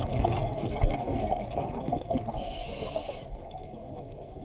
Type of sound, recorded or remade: remade